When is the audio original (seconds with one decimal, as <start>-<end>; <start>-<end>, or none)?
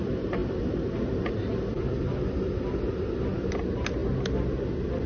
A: 0.0-5.1